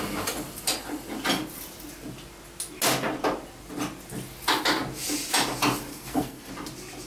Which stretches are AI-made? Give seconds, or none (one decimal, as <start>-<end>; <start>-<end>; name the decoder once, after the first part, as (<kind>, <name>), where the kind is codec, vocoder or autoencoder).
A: 5.9-6.5 (codec, SNAC)